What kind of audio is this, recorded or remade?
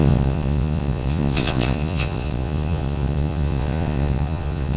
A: remade